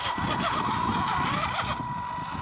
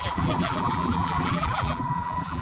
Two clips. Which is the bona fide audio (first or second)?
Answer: first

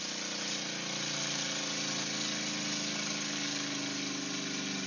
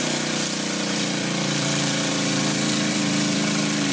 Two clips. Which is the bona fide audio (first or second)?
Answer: first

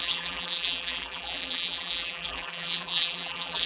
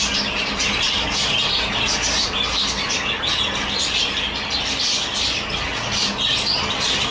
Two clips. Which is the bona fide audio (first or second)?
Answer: second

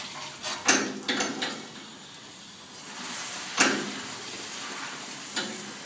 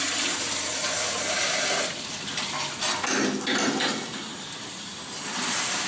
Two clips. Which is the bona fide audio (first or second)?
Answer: first